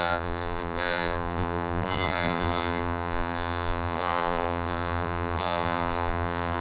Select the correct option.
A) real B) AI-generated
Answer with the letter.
B